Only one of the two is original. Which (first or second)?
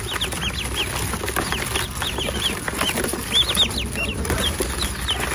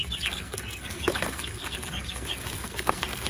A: first